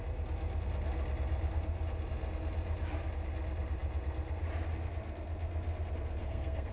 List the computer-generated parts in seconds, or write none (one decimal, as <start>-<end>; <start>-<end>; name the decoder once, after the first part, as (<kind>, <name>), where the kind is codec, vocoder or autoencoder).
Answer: 6.2-6.7 (codec, SNAC)

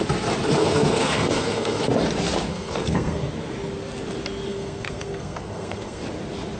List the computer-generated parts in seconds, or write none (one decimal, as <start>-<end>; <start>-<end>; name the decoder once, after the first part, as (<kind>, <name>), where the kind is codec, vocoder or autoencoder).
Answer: 0.6-1.8 (codec, SNAC); 2.5-3.3; 4.5-6.0

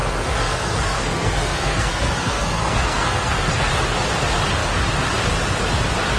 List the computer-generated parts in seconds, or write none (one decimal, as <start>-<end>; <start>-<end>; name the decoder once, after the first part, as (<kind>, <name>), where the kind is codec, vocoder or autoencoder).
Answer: 0.0-3.7 (codec, SNAC)

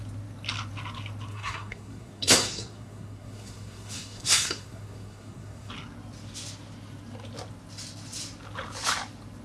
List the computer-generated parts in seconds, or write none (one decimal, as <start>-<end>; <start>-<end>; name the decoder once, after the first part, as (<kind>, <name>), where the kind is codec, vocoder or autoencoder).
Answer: 1.3-5.7 (codec, SNAC)

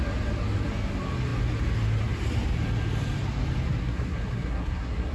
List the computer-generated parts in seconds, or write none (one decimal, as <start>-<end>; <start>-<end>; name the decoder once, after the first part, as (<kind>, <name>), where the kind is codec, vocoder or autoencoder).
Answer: 3.8-5.1 (codec, SNAC)

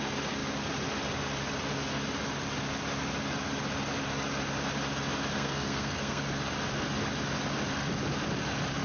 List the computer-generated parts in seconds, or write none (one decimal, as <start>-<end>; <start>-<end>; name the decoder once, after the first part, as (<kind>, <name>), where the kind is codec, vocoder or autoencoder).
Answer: 5.3-6.2 (codec, SNAC)

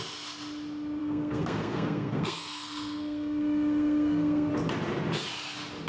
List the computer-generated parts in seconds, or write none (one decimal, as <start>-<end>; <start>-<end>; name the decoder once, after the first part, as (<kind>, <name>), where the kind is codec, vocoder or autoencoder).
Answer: 1.0-4.5 (codec, SNAC)